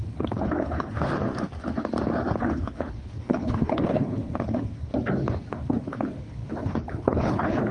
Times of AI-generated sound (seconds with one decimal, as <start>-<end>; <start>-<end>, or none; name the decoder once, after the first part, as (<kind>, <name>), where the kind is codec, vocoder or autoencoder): 0.0-1.3 (codec, HILCodec); 2.4-4.9; 5.5-7.7